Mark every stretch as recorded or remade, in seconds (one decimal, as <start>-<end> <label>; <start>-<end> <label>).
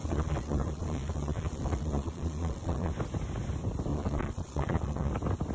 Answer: 0.0-2.9 remade; 2.9-3.9 recorded; 3.9-5.1 remade; 5.1-5.5 recorded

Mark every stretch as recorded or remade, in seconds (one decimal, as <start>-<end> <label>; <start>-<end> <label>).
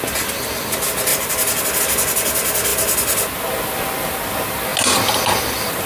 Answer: 0.0-5.9 recorded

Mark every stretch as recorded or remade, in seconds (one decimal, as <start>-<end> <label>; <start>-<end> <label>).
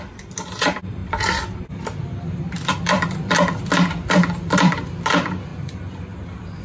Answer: 0.0-5.5 remade; 5.5-6.6 recorded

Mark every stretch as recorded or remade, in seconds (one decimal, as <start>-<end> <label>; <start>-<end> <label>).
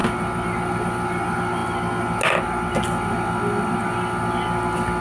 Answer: 0.0-5.0 recorded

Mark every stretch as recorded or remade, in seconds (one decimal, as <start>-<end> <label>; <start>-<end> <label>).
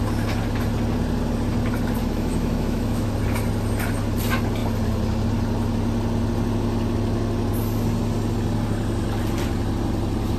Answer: 0.0-2.0 recorded; 2.0-3.1 remade; 3.1-10.4 recorded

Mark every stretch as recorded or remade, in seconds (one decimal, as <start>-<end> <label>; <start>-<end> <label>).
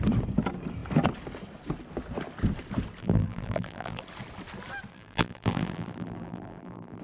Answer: 0.0-3.0 recorded; 3.0-4.0 remade; 4.0-4.9 recorded; 4.9-7.0 remade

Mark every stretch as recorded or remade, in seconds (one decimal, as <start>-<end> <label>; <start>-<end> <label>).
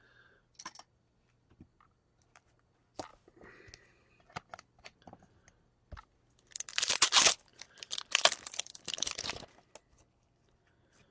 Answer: 0.0-11.1 recorded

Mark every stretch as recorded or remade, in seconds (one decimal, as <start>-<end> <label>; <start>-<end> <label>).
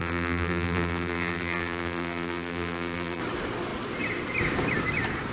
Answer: 0.0-3.2 remade; 3.2-5.3 recorded